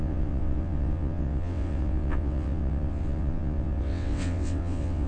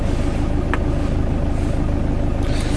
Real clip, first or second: second